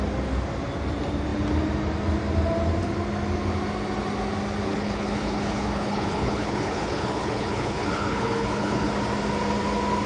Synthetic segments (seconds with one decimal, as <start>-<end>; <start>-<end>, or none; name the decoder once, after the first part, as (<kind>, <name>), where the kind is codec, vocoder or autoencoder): 4.7-8.9 (codec, HILCodec)